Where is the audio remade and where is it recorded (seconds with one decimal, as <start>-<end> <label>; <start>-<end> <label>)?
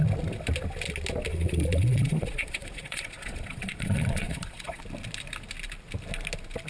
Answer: 0.0-1.3 recorded; 1.3-4.8 remade; 4.8-6.7 recorded